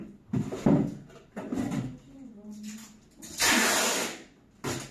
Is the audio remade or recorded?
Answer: recorded